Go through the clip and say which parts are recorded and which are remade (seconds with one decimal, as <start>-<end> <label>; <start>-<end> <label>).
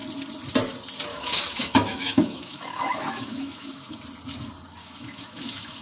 0.0-1.1 recorded; 1.1-4.0 remade; 4.0-4.8 recorded; 4.8-5.8 remade